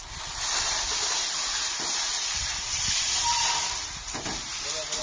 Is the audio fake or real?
real